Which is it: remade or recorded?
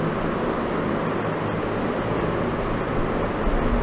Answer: recorded